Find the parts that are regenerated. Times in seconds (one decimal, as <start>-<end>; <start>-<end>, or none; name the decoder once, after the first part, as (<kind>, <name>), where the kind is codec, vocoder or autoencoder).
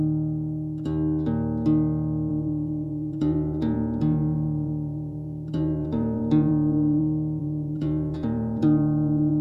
2.3-7.0 (vocoder, Vocos); 7.4-9.4